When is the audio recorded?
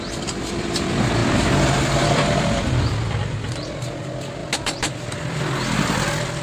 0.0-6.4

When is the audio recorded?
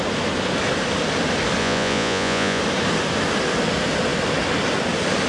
0.0-1.6; 2.6-5.3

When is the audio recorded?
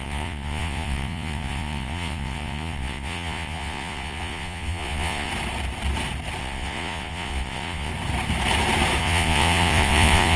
5.3-6.4; 7.9-9.0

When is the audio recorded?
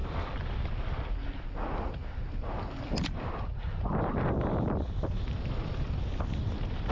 0.0-6.9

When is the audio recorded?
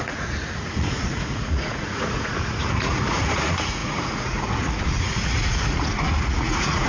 none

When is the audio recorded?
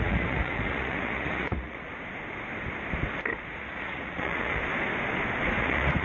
1.9-3.6; 4.6-5.6